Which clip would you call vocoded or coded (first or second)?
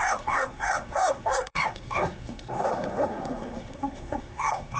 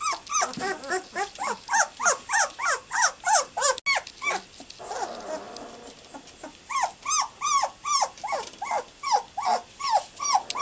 first